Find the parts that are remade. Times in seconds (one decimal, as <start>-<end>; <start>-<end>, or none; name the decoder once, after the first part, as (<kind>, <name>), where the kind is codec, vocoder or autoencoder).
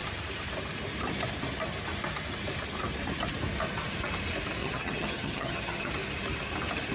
4.6-5.9 (vocoder, HiFi-GAN)